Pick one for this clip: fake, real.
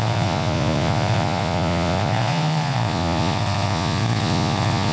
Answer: fake